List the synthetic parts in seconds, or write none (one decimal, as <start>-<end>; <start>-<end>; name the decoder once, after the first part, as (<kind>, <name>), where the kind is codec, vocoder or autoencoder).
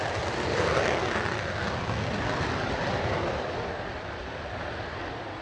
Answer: 0.0-1.0 (vocoder, BigVGAN v2); 4.2-5.4